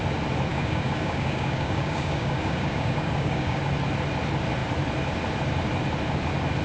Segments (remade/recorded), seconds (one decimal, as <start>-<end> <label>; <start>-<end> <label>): 0.0-0.5 recorded; 0.5-3.6 remade; 3.6-6.6 recorded

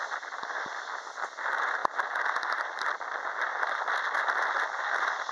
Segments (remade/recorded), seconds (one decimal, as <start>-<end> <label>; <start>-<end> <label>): 0.0-5.3 recorded

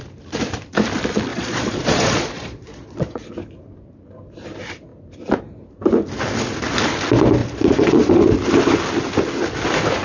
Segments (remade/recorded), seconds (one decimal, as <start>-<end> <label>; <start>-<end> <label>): 0.0-1.3 recorded; 1.3-3.3 remade; 3.3-7.4 recorded; 7.4-8.1 remade; 8.1-10.0 recorded